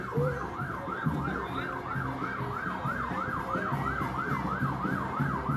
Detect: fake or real real